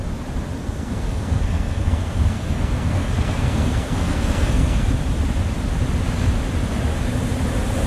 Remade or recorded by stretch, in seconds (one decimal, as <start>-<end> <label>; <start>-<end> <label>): 0.0-0.6 recorded; 0.6-4.9 remade; 4.9-7.9 recorded